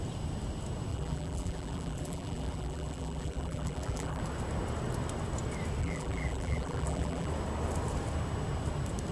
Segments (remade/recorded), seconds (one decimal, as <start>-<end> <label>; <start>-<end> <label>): 0.0-0.9 recorded; 0.9-4.2 remade; 4.2-5.8 recorded; 5.8-7.3 remade; 7.3-9.1 recorded